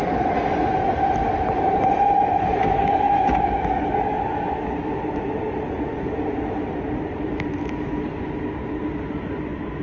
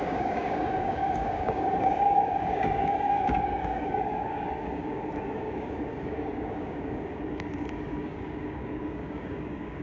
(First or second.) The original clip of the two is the first